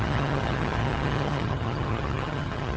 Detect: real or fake fake